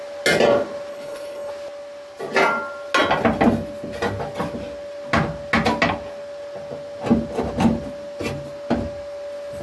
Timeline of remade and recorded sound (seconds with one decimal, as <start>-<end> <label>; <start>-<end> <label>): 0.0-0.9 recorded; 0.9-1.5 remade; 1.5-9.6 recorded